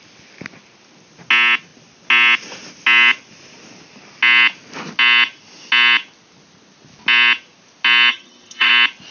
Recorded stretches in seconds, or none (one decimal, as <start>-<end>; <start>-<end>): 0.0-8.1; 8.7-9.1